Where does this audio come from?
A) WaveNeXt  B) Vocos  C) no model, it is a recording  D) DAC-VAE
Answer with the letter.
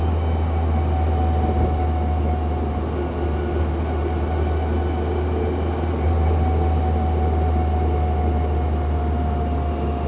C